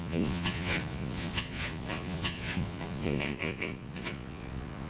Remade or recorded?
remade